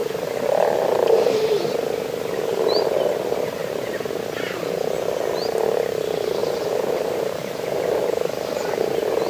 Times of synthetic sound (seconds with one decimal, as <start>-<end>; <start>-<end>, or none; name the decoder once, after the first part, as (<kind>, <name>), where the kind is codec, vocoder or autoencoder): 0.0-1.5 (vocoder, BigVGAN v2); 3.6-4.2; 6.4-9.3